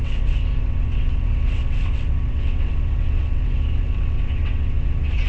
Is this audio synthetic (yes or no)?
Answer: yes